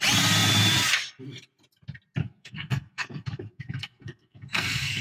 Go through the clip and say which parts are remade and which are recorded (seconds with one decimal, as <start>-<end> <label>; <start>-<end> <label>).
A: 0.0-2.2 recorded; 2.2-5.0 remade